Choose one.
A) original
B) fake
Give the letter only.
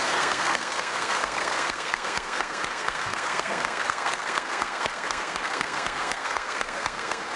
B